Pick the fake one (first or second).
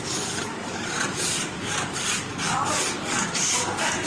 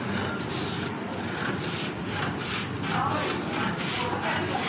first